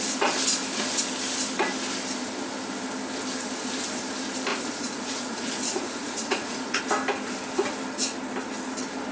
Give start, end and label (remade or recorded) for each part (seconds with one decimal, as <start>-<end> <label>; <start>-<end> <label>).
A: 0.0-4.5 recorded; 4.5-6.8 remade; 6.8-9.1 recorded